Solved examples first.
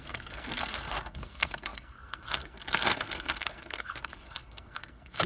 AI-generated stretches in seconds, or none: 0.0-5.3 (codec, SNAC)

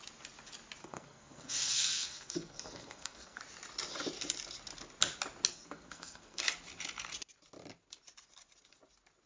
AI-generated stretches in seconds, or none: 0.8-3.4 (codec, SNAC); 5.5-6.4

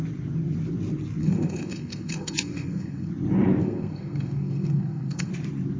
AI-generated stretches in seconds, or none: 1.2-3.1 (codec, SNAC); 3.6-5.3

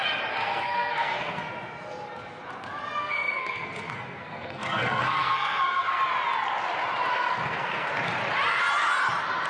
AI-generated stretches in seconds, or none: 0.4-1.4 (codec, SNAC); 3.0-6.0; 7.1-7.9

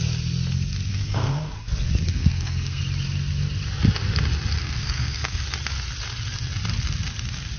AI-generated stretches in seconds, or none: 0.9-1.5 (codec, SNAC); 2.1-2.8; 4.6-5.4